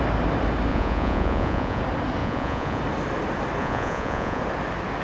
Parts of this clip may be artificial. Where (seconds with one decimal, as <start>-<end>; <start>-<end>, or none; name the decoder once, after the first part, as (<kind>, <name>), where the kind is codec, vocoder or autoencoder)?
0.7-1.8 (vocoder, Vocos); 2.2-2.8; 3.6-4.4